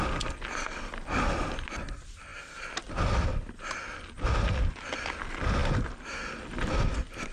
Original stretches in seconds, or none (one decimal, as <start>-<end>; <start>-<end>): 0.0-7.3